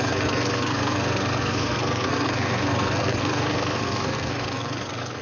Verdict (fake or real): fake